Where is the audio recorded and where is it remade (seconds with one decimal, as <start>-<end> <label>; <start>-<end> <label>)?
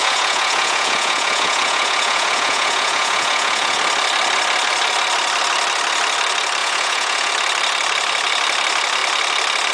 0.0-3.8 remade; 3.8-6.6 recorded; 6.6-7.3 remade; 7.3-9.7 recorded